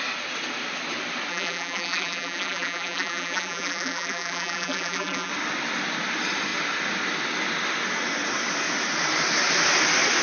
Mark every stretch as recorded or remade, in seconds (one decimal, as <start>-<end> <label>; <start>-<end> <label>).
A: 0.0-1.3 recorded; 1.3-5.3 remade; 5.3-10.2 recorded